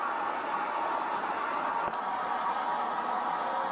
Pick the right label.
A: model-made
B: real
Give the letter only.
B